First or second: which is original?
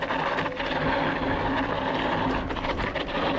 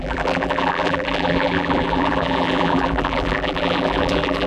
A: first